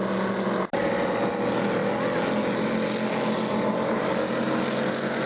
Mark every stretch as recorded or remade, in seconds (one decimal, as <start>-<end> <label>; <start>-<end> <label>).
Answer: 0.0-5.3 recorded